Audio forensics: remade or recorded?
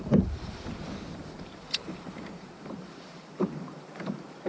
remade